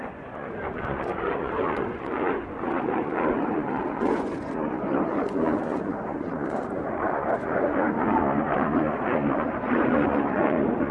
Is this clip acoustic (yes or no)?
no